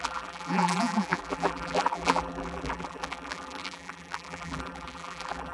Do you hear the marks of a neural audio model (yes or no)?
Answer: yes